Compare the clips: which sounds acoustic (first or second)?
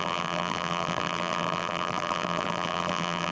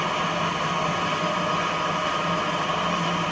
second